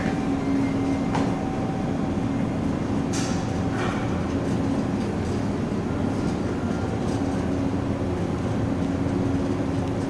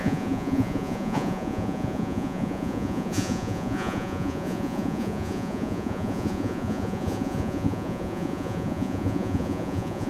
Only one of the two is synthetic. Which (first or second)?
second